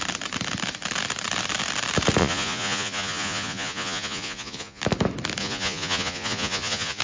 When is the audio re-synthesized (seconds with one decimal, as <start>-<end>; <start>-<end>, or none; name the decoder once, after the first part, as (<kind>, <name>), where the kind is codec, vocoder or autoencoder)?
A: 2.2-4.8 (vocoder, Vocos); 5.4-7.0